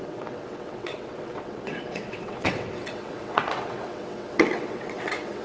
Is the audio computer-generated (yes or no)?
yes